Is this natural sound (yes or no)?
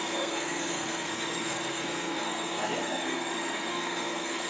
no